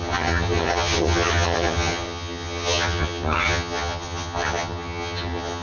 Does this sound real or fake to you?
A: fake